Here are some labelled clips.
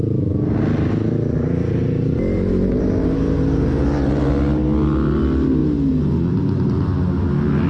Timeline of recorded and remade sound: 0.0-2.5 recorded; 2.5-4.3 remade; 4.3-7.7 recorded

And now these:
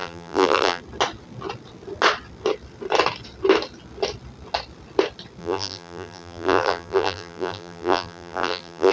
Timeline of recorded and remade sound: 0.0-0.8 remade; 0.8-5.4 recorded; 5.4-8.9 remade

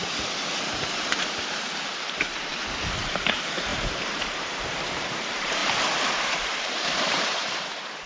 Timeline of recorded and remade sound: 0.0-0.8 recorded; 0.8-2.5 remade; 2.5-3.3 recorded; 3.3-8.1 remade

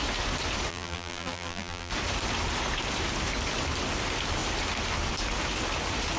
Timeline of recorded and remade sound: 0.0-0.7 recorded; 0.7-1.9 remade; 1.9-6.2 recorded

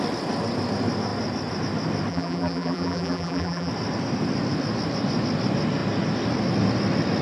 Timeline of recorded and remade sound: 0.0-2.1 recorded; 2.1-3.7 remade; 3.7-7.2 recorded